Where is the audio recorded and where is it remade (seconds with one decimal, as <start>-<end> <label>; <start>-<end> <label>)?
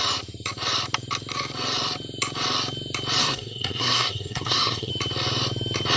0.0-3.2 recorded; 3.2-4.9 remade; 4.9-6.0 recorded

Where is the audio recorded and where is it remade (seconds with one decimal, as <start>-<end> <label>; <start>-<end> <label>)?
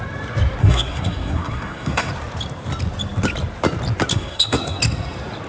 0.0-0.6 recorded; 0.6-2.1 remade; 2.1-4.1 recorded; 4.1-4.8 remade; 4.8-5.5 recorded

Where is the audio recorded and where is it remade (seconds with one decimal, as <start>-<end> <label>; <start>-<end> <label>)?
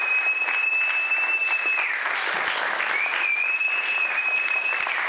0.0-5.1 recorded